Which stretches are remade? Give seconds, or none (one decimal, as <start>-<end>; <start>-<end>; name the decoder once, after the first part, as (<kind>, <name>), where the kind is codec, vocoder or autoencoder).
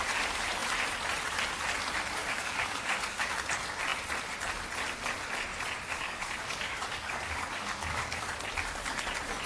2.2-3.3 (codec, DAC); 5.9-8.3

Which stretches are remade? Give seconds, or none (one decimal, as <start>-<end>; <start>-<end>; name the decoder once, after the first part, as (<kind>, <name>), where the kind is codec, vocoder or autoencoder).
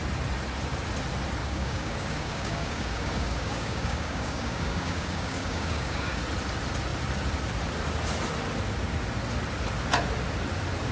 1.4-6.2 (codec, DAC)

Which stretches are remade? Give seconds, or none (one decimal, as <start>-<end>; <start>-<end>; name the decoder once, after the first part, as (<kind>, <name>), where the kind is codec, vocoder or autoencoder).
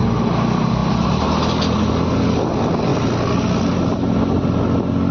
none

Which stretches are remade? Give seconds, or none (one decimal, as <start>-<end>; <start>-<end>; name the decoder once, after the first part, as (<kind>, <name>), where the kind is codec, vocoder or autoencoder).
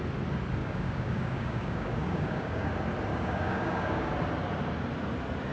0.6-2.7 (codec, DAC); 3.1-4.1